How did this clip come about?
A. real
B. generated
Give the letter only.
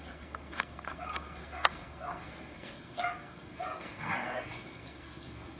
B